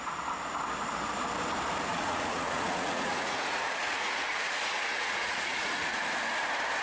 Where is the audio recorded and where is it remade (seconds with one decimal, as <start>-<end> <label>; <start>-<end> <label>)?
0.0-1.9 recorded; 1.9-6.0 remade; 6.0-6.8 recorded